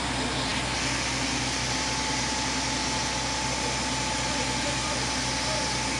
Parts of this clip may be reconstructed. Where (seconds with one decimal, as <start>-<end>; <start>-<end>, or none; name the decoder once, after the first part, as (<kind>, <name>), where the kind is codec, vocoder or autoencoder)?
none